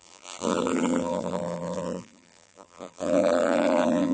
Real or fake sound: fake